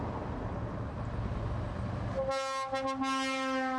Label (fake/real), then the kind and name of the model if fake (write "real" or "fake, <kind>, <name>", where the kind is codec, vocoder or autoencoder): real